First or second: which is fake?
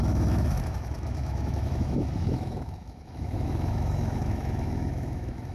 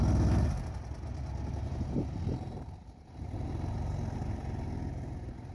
first